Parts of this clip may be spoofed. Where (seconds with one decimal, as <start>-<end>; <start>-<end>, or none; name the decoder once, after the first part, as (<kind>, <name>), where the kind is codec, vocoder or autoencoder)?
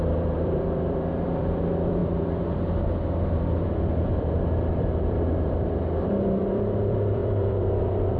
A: 0.0-8.2 (vocoder, BigVGAN v2)